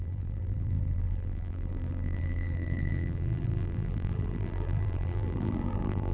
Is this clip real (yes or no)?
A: no